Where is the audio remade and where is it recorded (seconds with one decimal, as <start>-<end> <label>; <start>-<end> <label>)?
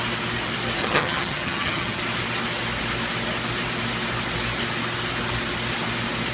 0.0-0.8 recorded; 0.8-2.0 remade; 2.0-6.3 recorded